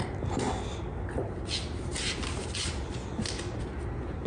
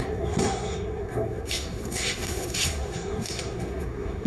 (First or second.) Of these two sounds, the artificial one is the second